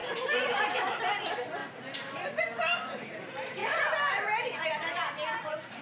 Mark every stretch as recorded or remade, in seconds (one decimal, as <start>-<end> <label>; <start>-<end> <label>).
0.0-0.6 remade; 0.6-5.8 recorded